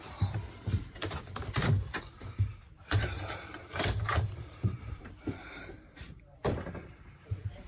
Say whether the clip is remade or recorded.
remade